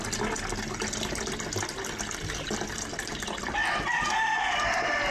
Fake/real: real